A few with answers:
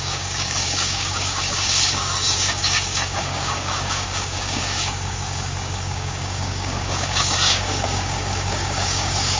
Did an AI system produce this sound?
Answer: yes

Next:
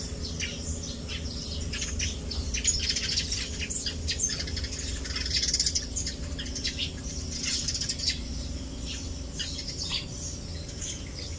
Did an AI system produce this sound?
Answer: no